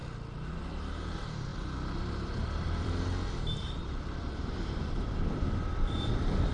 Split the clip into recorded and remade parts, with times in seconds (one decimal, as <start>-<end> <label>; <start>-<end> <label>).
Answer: 0.0-0.5 recorded; 0.5-6.5 remade